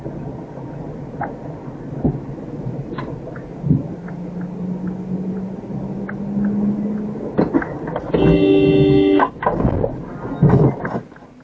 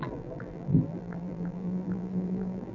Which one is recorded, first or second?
first